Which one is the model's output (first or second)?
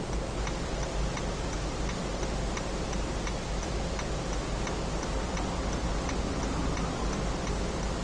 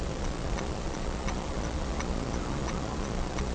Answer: second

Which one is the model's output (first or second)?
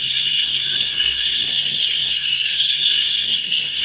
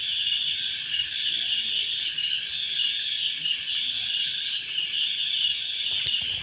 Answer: first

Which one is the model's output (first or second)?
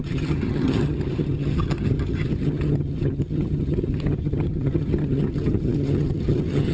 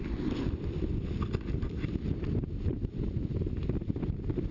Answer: first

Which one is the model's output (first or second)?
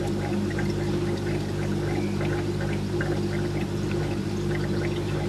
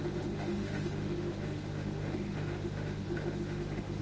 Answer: second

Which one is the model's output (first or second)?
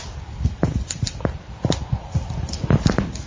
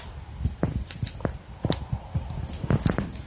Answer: first